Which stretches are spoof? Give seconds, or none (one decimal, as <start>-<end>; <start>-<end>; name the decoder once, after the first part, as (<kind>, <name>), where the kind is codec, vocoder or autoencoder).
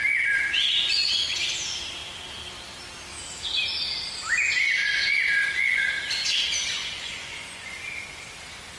4.8-5.8 (vocoder, Vocos); 6.8-7.8